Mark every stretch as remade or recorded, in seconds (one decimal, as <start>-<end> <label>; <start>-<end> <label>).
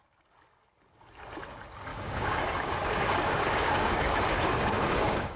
0.0-1.9 recorded; 1.9-5.4 remade